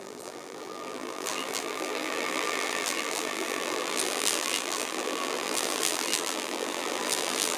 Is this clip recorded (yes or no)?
no